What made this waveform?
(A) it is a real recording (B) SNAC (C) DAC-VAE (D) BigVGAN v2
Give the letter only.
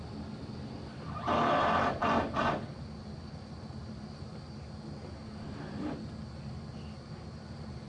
D